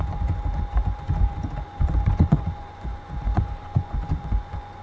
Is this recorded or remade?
remade